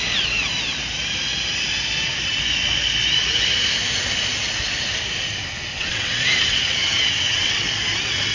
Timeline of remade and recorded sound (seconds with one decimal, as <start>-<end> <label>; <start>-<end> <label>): 0.0-5.7 recorded; 5.7-7.5 remade; 7.5-8.3 recorded